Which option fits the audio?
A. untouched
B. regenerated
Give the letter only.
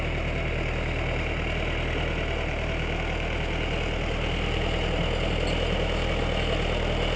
A